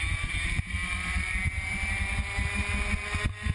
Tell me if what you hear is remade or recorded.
remade